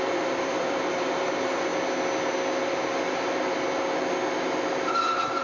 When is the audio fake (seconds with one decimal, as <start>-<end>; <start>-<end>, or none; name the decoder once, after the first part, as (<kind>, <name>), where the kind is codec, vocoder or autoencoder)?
0.0-1.7 (vocoder, BigVGAN v2); 4.9-5.4